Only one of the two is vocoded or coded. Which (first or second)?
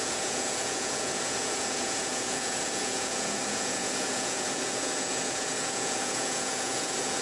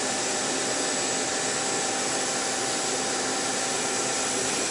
first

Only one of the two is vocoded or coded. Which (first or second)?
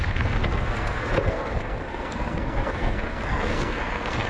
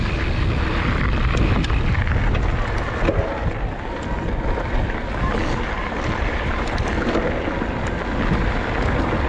first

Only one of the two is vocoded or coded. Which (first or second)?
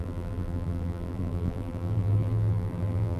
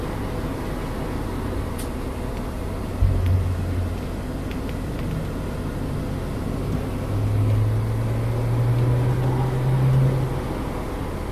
first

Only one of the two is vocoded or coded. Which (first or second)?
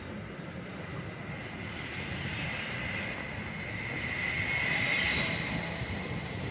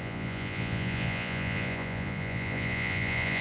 second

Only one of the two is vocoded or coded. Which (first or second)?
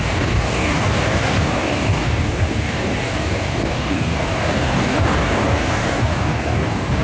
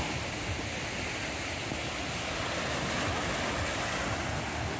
first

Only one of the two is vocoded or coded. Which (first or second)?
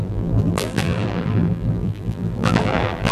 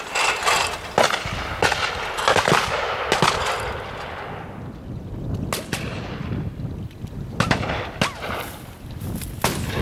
first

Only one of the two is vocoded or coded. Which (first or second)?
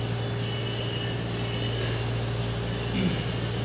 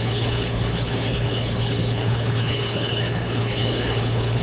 second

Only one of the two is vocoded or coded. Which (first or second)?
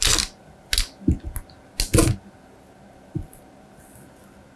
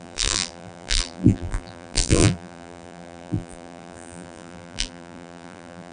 second